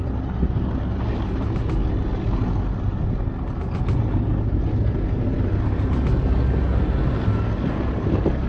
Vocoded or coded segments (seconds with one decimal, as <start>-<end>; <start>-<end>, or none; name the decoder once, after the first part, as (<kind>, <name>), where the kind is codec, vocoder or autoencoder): none